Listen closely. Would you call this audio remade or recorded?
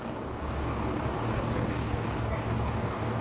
remade